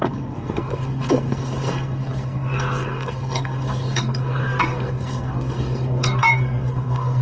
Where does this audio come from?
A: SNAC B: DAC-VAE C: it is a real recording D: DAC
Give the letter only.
A